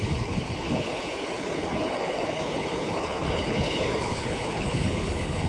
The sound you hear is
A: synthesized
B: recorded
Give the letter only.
A